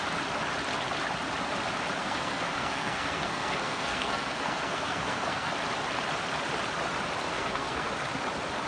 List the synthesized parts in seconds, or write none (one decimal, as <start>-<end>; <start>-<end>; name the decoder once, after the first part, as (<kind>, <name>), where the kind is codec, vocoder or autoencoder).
2.0-5.5 (codec, SNAC); 7.3-7.9